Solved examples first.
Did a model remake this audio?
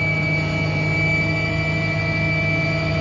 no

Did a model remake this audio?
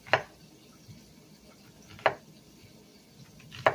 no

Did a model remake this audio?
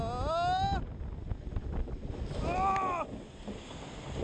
no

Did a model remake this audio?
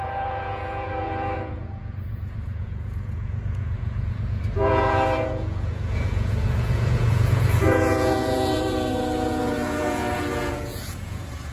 yes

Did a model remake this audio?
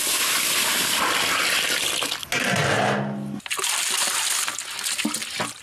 no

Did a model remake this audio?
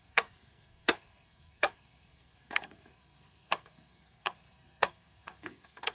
yes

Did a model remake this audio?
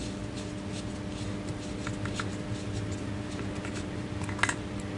no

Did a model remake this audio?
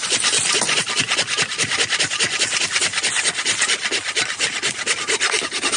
no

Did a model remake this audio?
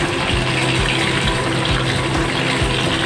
no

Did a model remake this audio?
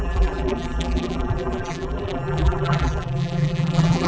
yes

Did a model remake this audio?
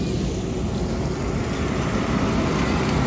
no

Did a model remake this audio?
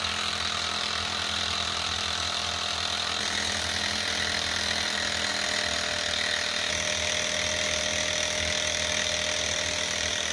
no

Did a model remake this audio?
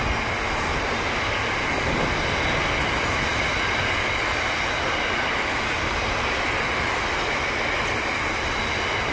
no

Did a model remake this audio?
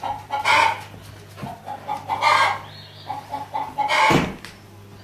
no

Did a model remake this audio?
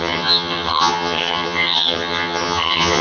yes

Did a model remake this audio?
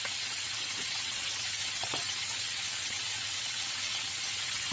yes